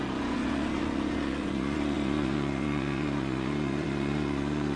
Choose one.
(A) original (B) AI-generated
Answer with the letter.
B